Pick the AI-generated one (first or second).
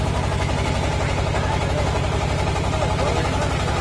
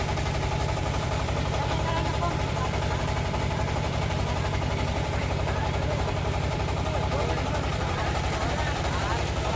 second